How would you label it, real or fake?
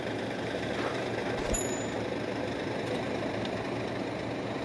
fake